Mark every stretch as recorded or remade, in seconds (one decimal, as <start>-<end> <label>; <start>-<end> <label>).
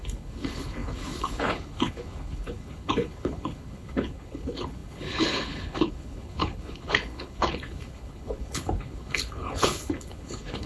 0.0-10.7 remade